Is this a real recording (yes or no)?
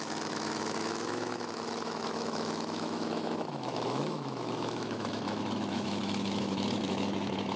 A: no